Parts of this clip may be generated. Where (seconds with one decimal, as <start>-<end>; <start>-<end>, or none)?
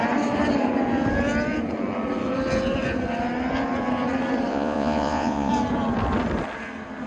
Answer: 4.5-5.5